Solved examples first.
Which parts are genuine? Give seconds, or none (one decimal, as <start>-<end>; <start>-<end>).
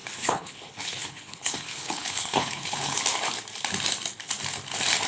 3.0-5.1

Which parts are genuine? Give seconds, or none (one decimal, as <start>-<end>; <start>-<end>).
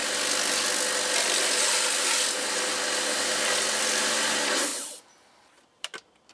0.0-3.8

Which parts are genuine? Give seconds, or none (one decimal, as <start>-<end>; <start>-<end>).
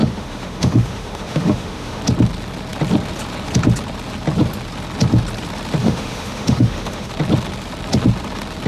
2.0-5.8; 7.1-8.7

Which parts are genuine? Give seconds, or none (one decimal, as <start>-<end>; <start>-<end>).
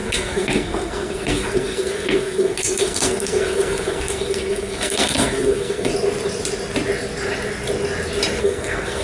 5.9-8.4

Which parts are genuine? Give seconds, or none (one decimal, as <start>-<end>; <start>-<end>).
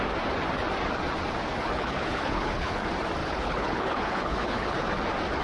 0.0-1.6; 2.8-3.2; 4.9-5.4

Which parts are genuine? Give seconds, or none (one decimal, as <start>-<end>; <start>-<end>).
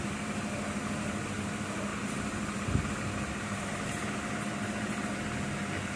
none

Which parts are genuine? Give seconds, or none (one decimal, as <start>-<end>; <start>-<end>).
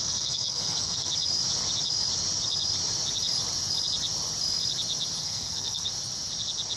1.1-5.2; 5.9-6.8